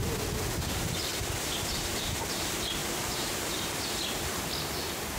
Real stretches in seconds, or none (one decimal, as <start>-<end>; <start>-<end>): 0.0-5.2